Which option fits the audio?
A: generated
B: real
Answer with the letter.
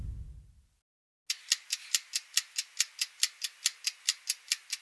B